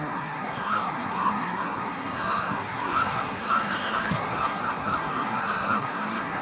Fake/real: fake